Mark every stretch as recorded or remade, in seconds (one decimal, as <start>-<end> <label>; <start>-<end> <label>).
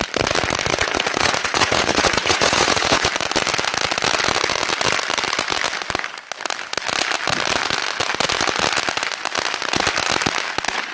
0.0-0.7 recorded; 0.7-3.1 remade; 3.1-10.9 recorded